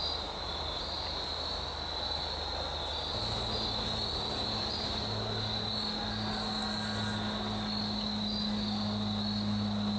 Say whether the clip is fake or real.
real